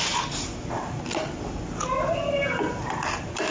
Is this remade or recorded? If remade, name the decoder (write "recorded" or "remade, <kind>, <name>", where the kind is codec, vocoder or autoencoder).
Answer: recorded